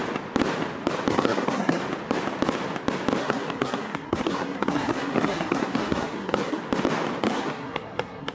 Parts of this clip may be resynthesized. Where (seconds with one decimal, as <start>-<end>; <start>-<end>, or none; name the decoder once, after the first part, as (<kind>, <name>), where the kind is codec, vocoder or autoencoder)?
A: 1.1-1.8 (codec, SNAC); 3.2-6.6; 7.2-8.3